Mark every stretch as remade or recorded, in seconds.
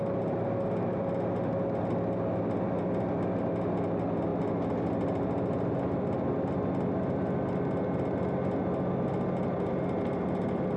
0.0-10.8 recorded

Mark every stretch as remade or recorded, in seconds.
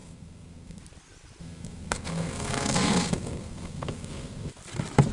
0.0-0.8 remade; 0.8-1.4 recorded; 1.4-4.5 remade; 4.5-5.1 recorded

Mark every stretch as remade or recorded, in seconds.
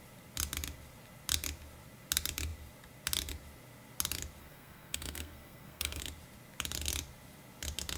0.0-4.4 recorded; 4.4-6.0 remade; 6.0-8.0 recorded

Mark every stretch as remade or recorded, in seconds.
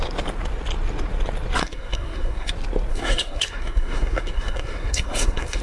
0.0-1.6 recorded; 1.6-2.5 remade; 2.5-2.9 recorded; 2.9-5.6 remade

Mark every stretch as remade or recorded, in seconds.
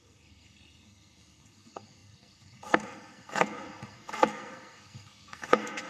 0.0-5.9 remade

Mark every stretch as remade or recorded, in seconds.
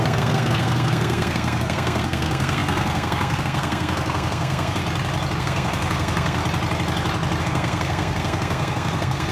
0.0-4.8 remade; 4.8-5.4 recorded; 5.4-6.4 remade; 6.4-7.4 recorded; 7.4-9.3 remade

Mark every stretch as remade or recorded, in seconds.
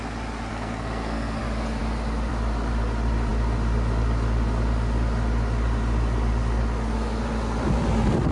0.0-0.5 recorded; 0.5-1.4 remade; 1.4-8.3 recorded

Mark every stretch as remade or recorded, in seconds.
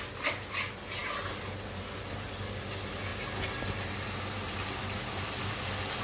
0.0-6.0 recorded